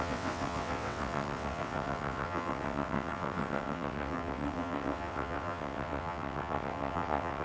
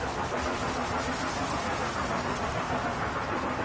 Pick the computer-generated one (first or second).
first